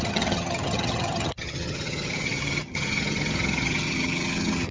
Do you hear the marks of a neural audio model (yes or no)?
yes